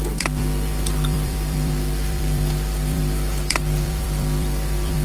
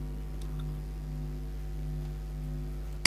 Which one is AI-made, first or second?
first